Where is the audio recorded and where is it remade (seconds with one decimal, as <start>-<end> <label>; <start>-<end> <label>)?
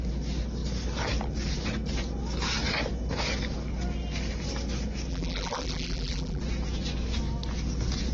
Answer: 0.0-5.1 recorded; 5.1-6.4 remade; 6.4-8.1 recorded